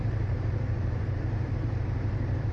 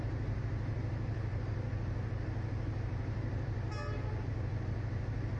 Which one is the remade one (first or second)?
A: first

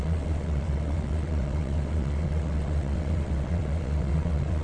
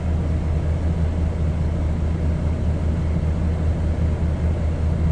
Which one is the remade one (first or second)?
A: first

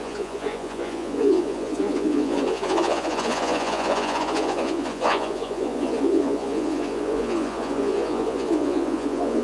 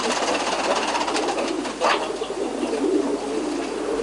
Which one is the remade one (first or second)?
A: first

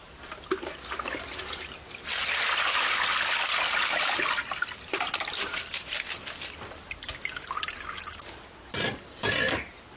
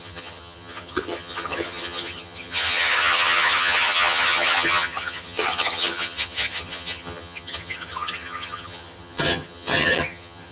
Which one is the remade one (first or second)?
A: second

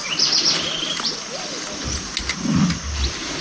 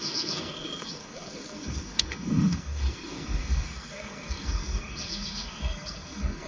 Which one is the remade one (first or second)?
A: second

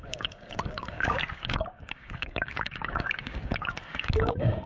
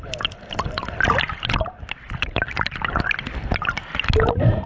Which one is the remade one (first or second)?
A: first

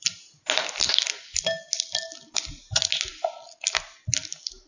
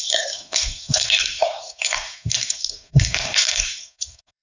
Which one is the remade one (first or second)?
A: second